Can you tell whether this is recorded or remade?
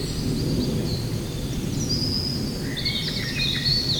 recorded